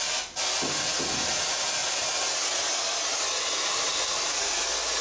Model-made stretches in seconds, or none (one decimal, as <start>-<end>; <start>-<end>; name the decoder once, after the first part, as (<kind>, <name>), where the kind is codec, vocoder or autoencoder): none